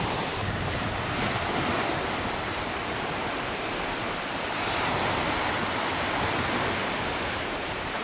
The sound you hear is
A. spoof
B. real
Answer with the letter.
A